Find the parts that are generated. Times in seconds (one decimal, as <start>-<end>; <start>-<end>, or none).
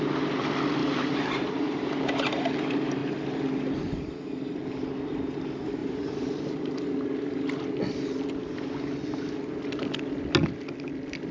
0.8-2.3; 5.8-6.8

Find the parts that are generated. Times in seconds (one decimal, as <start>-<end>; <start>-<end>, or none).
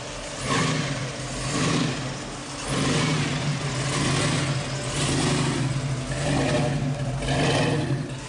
3.1-3.7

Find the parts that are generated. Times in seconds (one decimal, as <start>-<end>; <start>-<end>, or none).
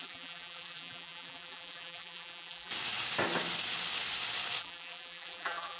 0.0-2.7; 4.6-5.8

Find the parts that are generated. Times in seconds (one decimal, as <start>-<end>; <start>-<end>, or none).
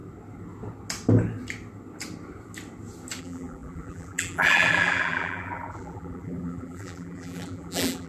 3.2-8.1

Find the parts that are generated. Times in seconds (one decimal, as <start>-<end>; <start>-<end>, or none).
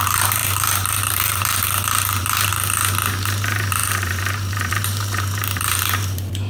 0.0-2.5; 3.1-6.5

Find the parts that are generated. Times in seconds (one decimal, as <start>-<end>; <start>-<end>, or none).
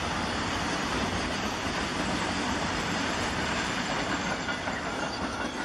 1.9-5.0